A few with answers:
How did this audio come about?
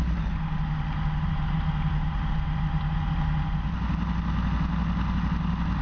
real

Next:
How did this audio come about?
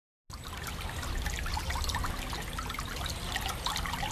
real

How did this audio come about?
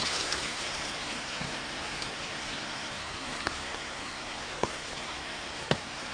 fake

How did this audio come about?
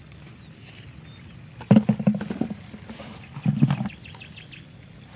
real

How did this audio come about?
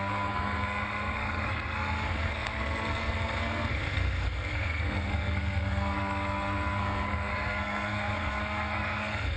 fake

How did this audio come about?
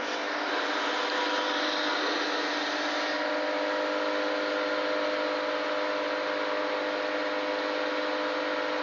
real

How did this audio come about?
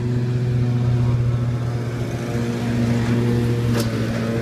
real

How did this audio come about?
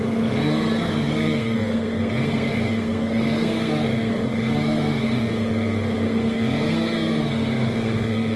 fake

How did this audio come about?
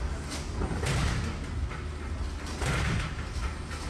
real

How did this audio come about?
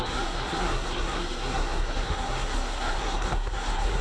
fake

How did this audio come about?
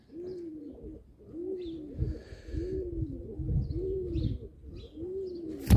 real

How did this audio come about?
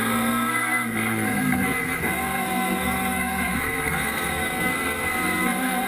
fake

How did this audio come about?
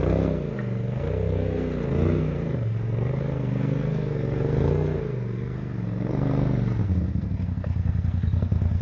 fake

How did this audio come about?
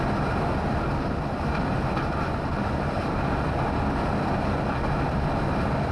real